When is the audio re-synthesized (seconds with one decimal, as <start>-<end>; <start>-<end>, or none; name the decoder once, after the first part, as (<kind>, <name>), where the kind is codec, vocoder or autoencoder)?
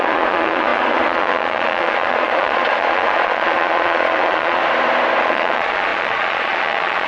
0.0-4.6 (vocoder, Vocos); 5.2-7.1